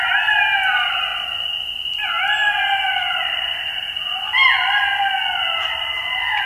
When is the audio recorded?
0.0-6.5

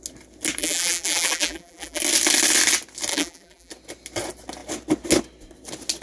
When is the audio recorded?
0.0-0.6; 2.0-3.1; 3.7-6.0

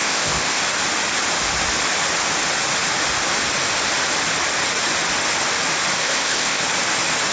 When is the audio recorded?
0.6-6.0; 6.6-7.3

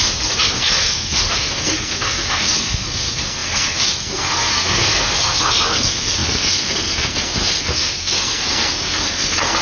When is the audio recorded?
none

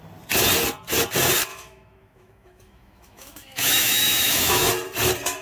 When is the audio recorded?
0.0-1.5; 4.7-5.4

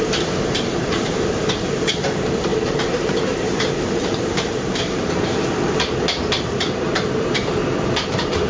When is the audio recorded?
7.4-8.1

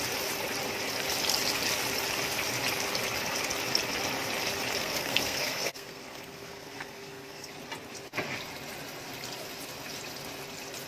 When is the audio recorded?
0.0-4.8; 7.5-10.9